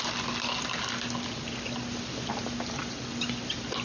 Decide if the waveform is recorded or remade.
recorded